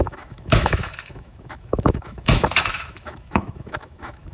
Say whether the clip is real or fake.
fake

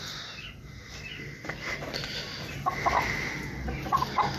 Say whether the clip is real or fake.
real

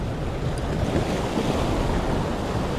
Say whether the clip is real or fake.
real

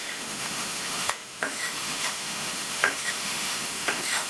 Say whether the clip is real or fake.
fake